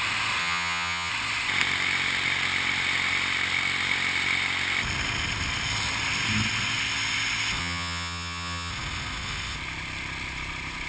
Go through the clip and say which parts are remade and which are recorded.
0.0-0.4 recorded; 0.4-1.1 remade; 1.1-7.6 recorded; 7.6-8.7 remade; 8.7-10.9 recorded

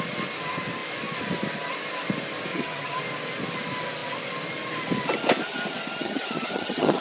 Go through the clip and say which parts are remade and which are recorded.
0.0-2.5 recorded; 2.5-3.0 remade; 3.0-6.0 recorded; 6.0-7.0 remade